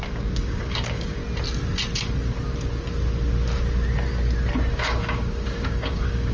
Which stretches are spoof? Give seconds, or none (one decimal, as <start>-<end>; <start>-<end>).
0.0-1.2; 4.7-6.3